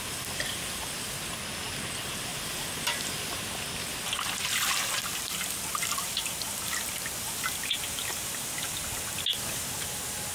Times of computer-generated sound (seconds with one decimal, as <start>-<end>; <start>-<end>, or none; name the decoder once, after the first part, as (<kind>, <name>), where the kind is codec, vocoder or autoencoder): none